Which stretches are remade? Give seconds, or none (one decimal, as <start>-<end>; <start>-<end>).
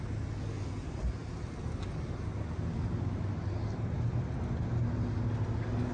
none